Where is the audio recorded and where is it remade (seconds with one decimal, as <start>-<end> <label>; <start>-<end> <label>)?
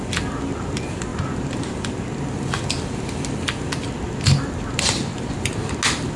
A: 0.0-6.2 recorded